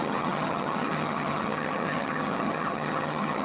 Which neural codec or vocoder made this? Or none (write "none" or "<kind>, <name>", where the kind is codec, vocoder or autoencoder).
vocoder, HiFi-GAN